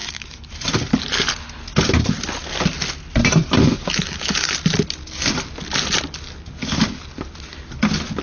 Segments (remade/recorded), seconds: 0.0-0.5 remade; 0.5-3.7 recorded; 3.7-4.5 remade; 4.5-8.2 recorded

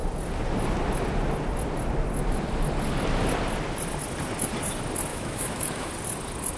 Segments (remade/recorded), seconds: 0.0-5.1 recorded; 5.1-5.9 remade; 5.9-6.6 recorded

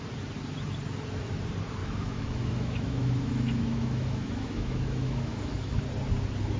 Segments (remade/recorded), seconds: 0.0-1.8 recorded; 1.8-5.8 remade; 5.8-6.6 recorded

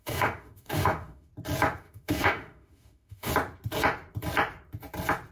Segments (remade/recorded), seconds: 0.0-1.3 remade; 1.3-1.8 recorded; 1.8-3.3 remade; 3.3-5.3 recorded

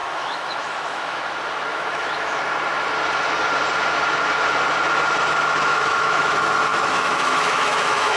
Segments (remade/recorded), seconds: 0.0-1.2 remade; 1.2-1.7 recorded; 1.7-2.4 remade; 2.4-5.7 recorded; 5.7-6.3 remade; 6.3-6.7 recorded; 6.7-8.2 remade

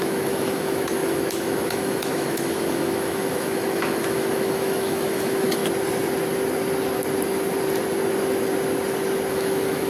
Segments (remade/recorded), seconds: 0.0-5.6 remade; 5.6-9.3 recorded; 9.3-9.9 remade

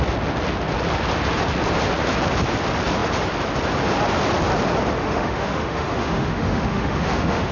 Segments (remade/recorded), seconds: 0.0-5.0 recorded; 5.0-7.5 remade